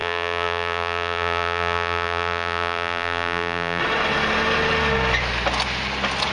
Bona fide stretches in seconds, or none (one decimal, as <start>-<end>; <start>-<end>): 3.8-6.3